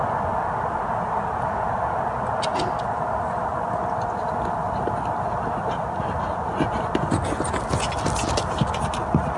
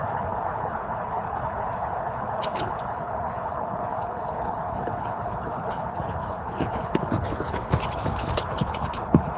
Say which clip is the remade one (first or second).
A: second